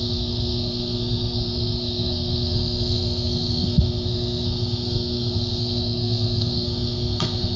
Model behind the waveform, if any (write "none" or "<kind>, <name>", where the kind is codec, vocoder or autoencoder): codec, SNAC